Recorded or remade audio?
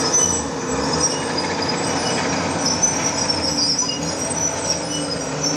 recorded